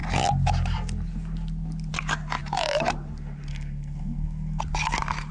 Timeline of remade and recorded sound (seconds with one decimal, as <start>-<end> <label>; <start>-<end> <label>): 0.0-3.5 recorded; 3.5-4.6 remade; 4.6-5.3 recorded